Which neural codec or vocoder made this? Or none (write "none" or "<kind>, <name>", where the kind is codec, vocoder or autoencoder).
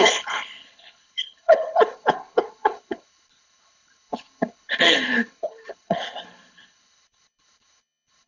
codec, HILCodec